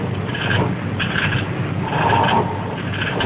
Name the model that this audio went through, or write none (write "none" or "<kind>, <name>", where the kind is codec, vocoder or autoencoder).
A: none